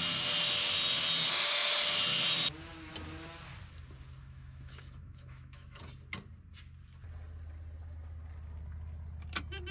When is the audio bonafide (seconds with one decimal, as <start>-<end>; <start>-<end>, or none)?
0.0-4.2; 5.8-9.7